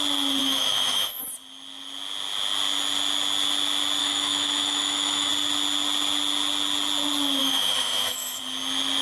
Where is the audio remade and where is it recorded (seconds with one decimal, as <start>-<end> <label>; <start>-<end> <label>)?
0.0-0.4 recorded; 0.4-1.2 remade; 1.2-4.0 recorded; 4.0-5.3 remade; 5.3-7.4 recorded; 7.4-8.4 remade; 8.4-9.0 recorded